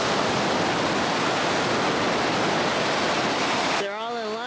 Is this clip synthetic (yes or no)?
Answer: no